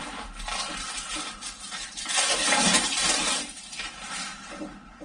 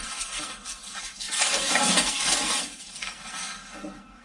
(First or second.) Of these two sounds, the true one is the first